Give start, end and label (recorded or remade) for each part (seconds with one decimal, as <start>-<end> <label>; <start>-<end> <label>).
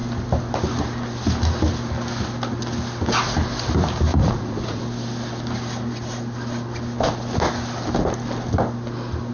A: 0.0-4.1 recorded; 4.1-4.8 remade; 4.8-9.3 recorded